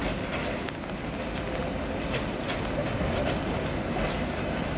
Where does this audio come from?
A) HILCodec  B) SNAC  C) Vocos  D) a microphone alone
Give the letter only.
D